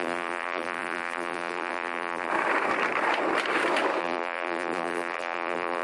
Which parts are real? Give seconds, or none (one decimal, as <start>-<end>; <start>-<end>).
2.3-4.0